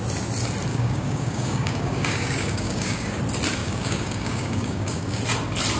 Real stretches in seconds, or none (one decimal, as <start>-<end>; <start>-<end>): 0.0-0.7; 3.2-3.6; 5.2-5.8